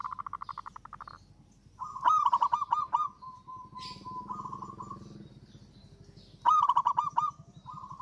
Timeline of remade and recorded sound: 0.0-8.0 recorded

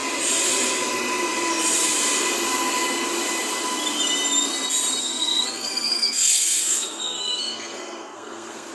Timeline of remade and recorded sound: 0.0-5.0 recorded; 5.0-8.7 remade

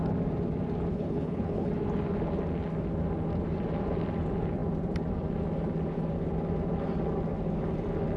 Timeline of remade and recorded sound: 0.0-0.9 recorded; 0.9-1.7 remade; 1.7-8.2 recorded

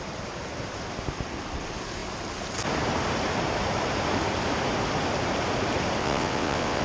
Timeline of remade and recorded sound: 0.0-6.0 recorded; 6.0-6.8 remade

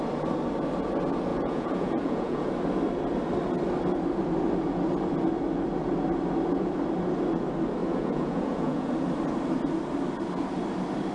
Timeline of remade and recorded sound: 0.0-1.3 recorded; 1.3-2.5 remade; 2.5-7.8 recorded; 7.8-8.9 remade; 8.9-11.1 recorded

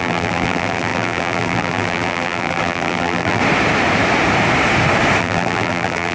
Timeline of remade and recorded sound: 0.0-3.4 remade; 3.4-5.2 recorded; 5.2-6.1 remade

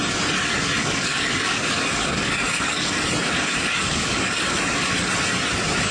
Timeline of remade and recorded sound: 0.0-0.8 recorded; 0.8-3.0 remade; 3.0-3.4 recorded; 3.4-4.5 remade; 4.5-5.9 recorded

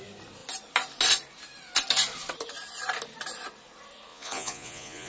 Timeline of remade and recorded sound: 0.0-4.1 recorded; 4.1-5.1 remade